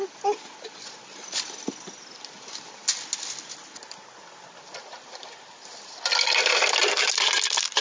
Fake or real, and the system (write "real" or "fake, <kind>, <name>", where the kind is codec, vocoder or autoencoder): real